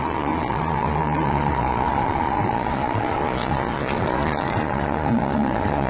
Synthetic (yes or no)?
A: yes